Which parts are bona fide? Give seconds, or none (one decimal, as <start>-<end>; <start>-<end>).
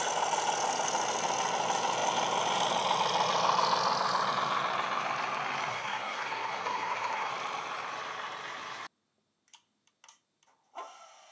0.0-5.7; 7.3-11.3